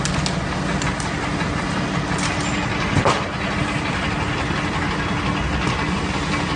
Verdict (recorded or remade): recorded